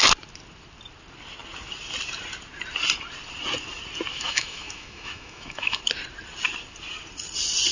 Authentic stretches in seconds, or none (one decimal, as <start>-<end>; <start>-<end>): 0.0-4.1; 5.8-7.7